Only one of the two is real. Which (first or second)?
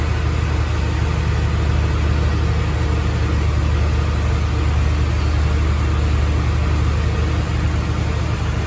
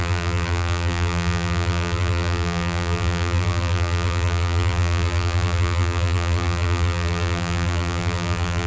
first